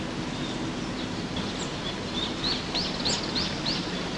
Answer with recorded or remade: recorded